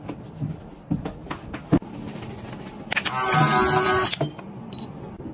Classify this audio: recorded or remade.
recorded